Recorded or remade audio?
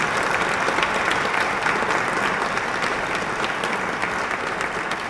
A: recorded